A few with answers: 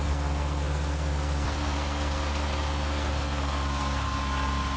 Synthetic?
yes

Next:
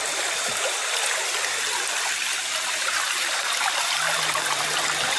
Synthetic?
no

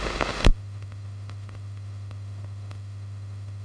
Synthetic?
yes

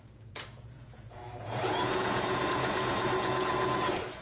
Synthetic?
yes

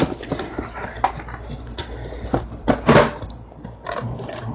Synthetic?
no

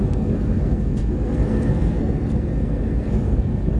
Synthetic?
yes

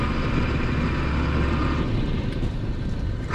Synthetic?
no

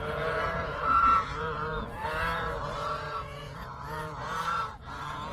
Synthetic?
yes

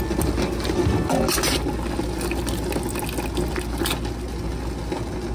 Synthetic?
no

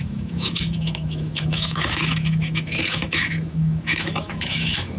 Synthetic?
yes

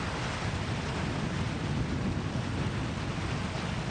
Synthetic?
no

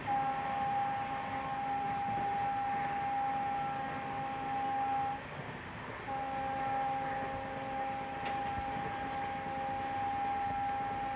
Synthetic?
no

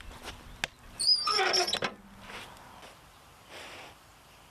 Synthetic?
no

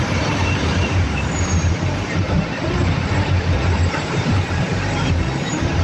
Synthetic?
yes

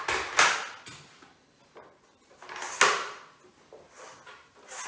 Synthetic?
no